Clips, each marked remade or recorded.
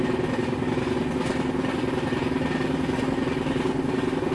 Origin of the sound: recorded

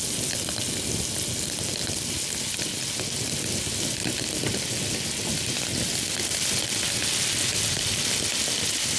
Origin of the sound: recorded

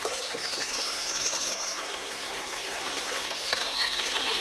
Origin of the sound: remade